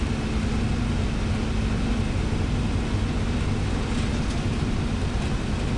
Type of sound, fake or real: real